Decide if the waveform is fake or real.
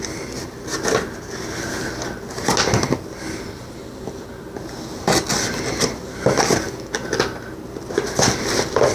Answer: real